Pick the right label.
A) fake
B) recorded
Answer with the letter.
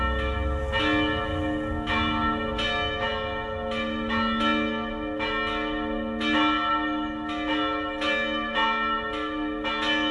B